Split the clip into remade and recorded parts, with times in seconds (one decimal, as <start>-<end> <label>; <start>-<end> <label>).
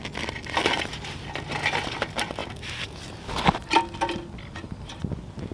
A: 0.0-5.5 recorded